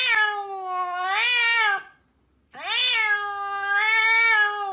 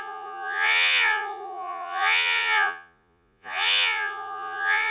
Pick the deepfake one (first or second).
second